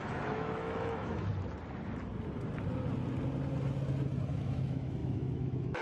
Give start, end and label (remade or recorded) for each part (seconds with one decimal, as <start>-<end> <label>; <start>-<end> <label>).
0.0-1.3 remade; 1.3-4.3 recorded; 4.3-5.8 remade